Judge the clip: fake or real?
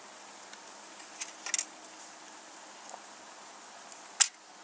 real